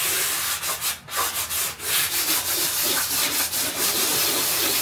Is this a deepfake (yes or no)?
no